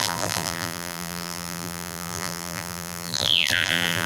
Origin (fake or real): fake